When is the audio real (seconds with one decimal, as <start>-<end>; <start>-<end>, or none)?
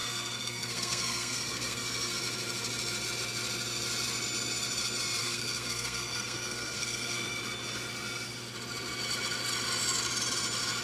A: 2.2-5.2; 7.3-10.8